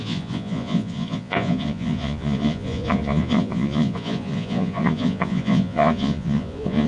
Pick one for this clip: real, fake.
fake